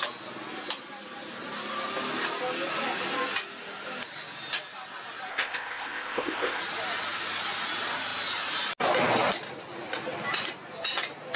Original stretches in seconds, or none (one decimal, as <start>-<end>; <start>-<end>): 0.0-5.3; 6.6-11.4